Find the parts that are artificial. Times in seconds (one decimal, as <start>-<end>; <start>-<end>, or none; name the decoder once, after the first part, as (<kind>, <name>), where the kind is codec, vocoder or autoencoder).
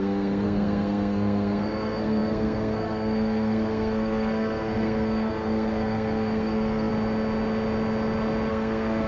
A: 0.0-6.9 (codec, SNAC); 8.5-9.1